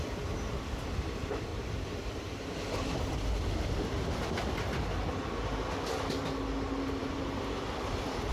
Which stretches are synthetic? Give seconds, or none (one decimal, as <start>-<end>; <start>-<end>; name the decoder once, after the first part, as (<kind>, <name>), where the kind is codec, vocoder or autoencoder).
none